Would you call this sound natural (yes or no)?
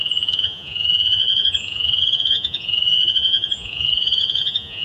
no